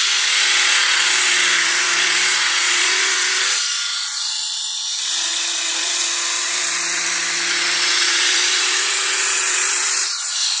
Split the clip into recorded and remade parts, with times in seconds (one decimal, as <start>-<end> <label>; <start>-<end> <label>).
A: 0.0-10.6 remade